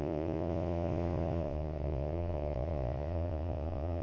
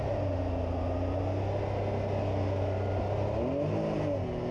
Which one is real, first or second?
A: second